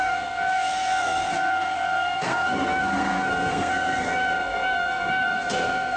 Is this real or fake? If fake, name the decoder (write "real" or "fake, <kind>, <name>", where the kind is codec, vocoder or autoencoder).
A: fake, codec, SNAC